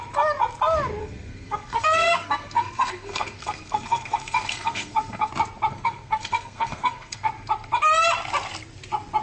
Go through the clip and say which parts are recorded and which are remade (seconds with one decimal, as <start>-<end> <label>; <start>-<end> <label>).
0.0-1.0 recorded; 1.0-5.3 remade; 5.3-5.7 recorded; 5.7-7.3 remade; 7.3-9.2 recorded